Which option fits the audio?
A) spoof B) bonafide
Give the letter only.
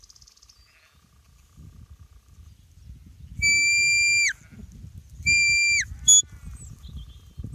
B